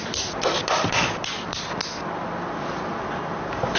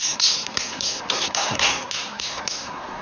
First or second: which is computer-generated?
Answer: second